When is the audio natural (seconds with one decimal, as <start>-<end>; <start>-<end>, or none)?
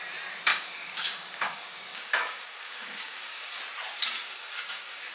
0.0-0.5; 3.6-4.2